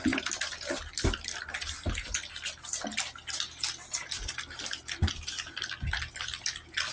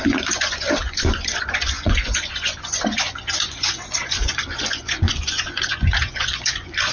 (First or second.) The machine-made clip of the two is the second